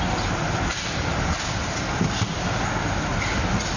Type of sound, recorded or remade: recorded